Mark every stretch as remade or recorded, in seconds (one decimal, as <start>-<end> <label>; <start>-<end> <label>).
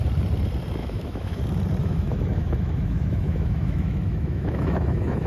0.0-0.8 recorded; 0.8-1.4 remade; 1.4-1.8 recorded; 1.8-5.3 remade